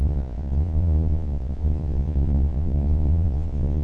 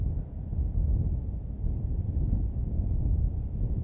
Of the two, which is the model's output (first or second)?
first